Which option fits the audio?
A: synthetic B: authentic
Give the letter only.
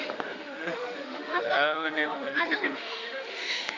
A